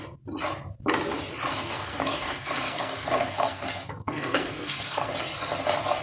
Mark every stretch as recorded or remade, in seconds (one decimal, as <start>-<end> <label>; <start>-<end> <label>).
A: 0.0-1.5 recorded; 1.5-5.1 remade; 5.1-6.0 recorded